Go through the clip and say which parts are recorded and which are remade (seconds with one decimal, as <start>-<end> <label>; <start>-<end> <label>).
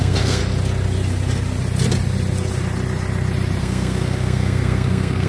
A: 0.0-0.4 remade; 0.4-3.6 recorded; 3.6-5.3 remade